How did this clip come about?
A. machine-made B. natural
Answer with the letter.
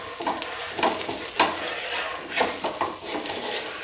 B